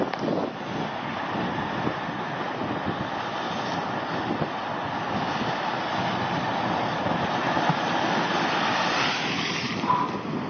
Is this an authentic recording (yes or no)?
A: yes